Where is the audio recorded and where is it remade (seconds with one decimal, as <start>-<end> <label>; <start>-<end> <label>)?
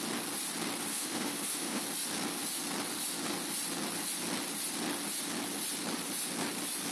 0.0-0.9 recorded; 0.9-1.8 remade; 1.8-6.9 recorded